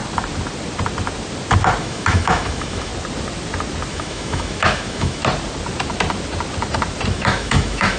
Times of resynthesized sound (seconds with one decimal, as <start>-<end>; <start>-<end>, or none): 1.8-2.9; 3.9-5.2; 7.1-8.0